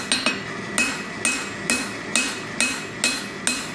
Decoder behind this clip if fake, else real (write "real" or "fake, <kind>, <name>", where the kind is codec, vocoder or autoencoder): real